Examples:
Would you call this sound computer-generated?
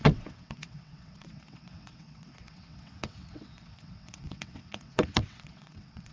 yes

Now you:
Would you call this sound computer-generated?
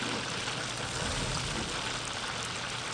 no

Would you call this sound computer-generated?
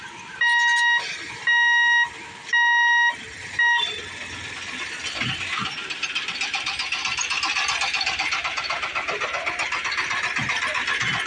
no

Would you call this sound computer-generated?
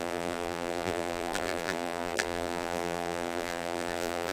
yes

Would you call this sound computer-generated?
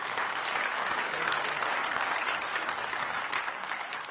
yes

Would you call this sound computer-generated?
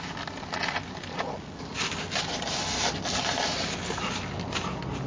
no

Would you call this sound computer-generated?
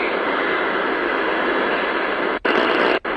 no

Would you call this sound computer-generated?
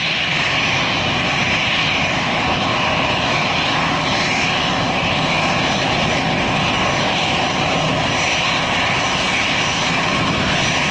no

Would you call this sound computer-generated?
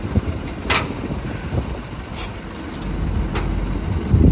no